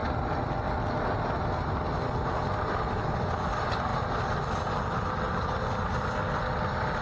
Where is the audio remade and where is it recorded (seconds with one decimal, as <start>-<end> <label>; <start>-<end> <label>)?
0.0-7.0 recorded